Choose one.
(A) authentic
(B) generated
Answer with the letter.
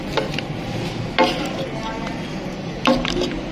A